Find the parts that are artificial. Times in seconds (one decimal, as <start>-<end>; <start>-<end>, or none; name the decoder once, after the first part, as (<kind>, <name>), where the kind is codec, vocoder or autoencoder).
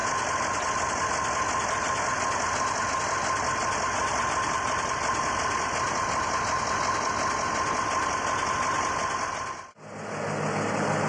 none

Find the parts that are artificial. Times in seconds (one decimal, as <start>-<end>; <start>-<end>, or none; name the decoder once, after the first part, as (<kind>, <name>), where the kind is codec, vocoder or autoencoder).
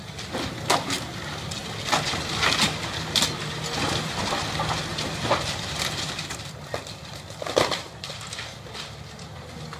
4.9-8.7 (vocoder, BigVGAN v2)